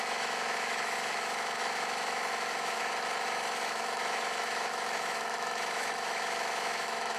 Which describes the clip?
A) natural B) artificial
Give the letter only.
B